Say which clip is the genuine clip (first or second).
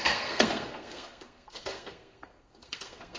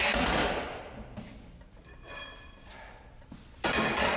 second